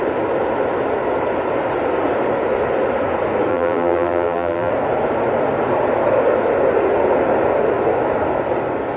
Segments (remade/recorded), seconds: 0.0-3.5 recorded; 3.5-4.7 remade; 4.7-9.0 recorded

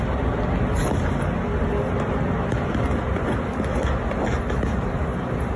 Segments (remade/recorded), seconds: 0.0-4.3 recorded; 4.3-5.6 remade

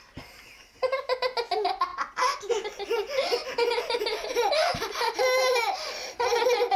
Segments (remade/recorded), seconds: 0.0-6.8 recorded

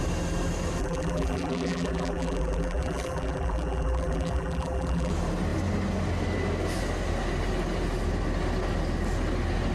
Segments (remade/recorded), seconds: 0.0-0.8 recorded; 0.8-5.1 remade; 5.1-9.7 recorded